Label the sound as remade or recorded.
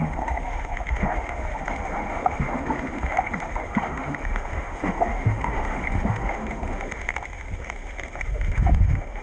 remade